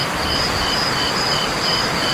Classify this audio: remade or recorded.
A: recorded